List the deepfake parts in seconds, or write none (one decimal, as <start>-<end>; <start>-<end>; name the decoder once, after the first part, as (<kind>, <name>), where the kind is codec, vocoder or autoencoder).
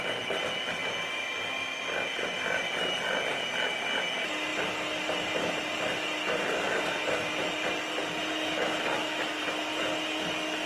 none